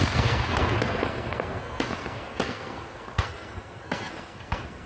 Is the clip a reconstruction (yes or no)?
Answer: yes